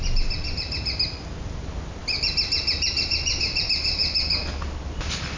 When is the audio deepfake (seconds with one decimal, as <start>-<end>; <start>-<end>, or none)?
none